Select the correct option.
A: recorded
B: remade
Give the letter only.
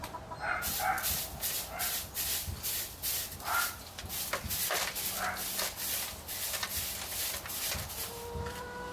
A